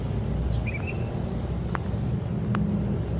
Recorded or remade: recorded